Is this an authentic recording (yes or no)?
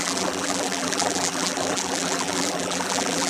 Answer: no